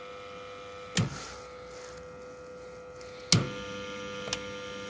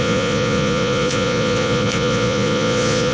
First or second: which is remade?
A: second